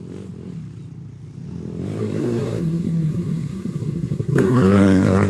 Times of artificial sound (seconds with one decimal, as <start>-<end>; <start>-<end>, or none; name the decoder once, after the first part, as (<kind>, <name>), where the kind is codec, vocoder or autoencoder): 2.0-5.3 (codec, SNAC)